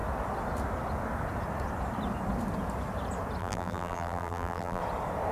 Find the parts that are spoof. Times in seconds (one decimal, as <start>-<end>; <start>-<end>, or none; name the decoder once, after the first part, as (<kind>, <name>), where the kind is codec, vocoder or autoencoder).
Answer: 3.4-4.8 (vocoder, BigVGAN v2)